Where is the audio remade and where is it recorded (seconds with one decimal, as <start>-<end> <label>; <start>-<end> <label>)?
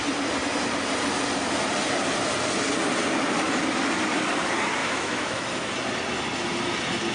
0.0-4.8 recorded; 4.8-5.7 remade; 5.7-7.1 recorded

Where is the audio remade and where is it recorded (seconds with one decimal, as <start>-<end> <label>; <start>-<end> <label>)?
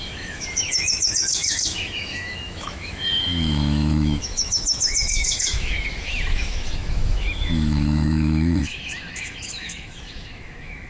0.0-10.9 remade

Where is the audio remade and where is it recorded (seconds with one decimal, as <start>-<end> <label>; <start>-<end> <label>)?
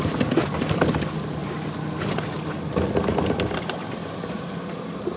0.0-5.2 recorded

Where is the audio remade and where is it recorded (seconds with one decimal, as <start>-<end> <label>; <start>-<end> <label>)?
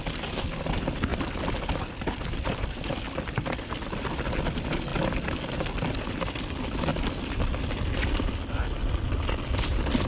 0.0-10.1 recorded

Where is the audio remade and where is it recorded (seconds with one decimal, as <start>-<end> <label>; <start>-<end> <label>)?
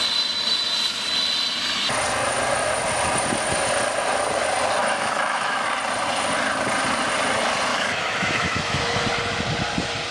0.0-4.8 recorded; 4.8-5.7 remade; 5.7-7.7 recorded; 7.7-8.8 remade; 8.8-10.1 recorded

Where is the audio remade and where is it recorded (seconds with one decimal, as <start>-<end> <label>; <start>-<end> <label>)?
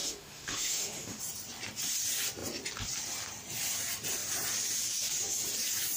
0.0-1.2 remade; 1.2-6.0 recorded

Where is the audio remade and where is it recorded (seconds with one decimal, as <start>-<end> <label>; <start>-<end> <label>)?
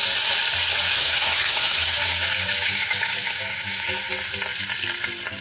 0.0-0.9 recorded; 0.9-4.1 remade; 4.1-5.4 recorded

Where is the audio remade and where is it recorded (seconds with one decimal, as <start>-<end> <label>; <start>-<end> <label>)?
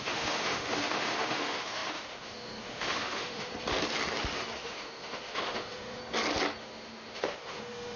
0.0-3.5 remade; 3.5-4.6 recorded; 4.6-6.0 remade; 6.0-6.6 recorded; 6.6-8.0 remade